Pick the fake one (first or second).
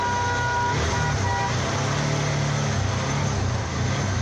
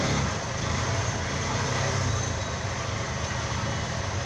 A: second